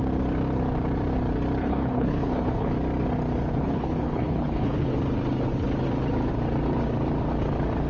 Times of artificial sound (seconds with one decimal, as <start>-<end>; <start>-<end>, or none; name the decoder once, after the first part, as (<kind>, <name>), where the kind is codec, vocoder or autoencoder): 1.6-2.7 (codec, HILCodec); 3.5-4.9